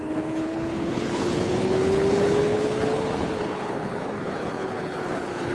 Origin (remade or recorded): remade